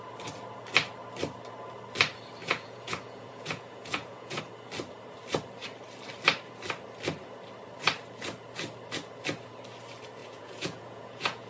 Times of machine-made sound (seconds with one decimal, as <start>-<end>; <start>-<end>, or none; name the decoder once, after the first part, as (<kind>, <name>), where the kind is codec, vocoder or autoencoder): 2.4-4.4 (vocoder, Vocos); 10.2-11.5